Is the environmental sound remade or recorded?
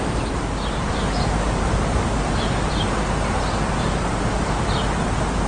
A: recorded